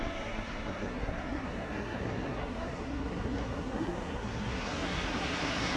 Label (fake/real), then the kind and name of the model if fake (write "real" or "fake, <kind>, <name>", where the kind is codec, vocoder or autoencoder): fake, codec, SNAC